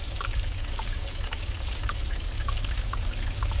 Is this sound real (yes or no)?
no